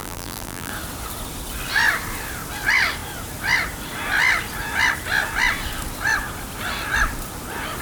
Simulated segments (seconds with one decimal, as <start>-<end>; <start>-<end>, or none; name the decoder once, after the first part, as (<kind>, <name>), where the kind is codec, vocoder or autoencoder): 0.0-0.7 (vocoder, BigVGAN v2)